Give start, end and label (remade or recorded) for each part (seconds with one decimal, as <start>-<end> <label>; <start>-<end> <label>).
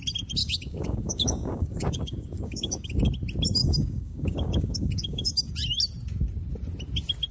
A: 0.0-0.4 recorded; 0.4-3.1 remade; 3.1-3.6 recorded; 3.6-5.5 remade; 5.5-7.3 recorded